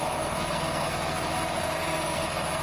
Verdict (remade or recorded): remade